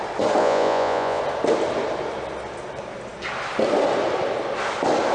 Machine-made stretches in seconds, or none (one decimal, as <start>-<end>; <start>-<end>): 0.4-1.2